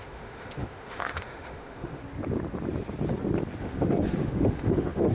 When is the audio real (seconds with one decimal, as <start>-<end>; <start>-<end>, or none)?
2.0-3.6